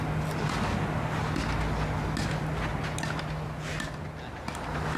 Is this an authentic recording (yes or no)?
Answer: yes